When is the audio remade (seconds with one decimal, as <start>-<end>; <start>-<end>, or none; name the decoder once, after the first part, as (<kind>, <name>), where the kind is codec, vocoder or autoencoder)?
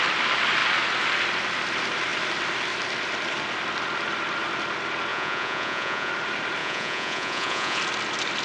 5.1-6.1 (vocoder, Vocos); 6.6-7.8